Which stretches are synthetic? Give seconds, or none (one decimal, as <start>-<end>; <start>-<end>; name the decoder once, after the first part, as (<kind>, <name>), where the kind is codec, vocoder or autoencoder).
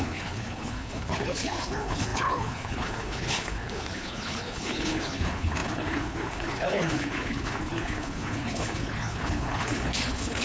0.0-10.4 (codec, HILCodec)